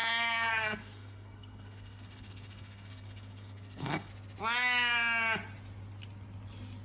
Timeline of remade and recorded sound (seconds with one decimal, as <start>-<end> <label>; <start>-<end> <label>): 0.0-4.1 remade; 4.1-6.8 recorded